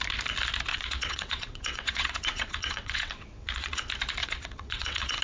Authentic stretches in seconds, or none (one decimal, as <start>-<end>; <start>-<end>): 0.0-0.7; 3.8-4.2